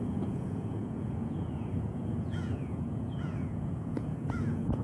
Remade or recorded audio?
remade